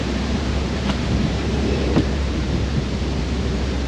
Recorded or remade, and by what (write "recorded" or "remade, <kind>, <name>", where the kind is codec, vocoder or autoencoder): remade, vocoder, BigVGAN v2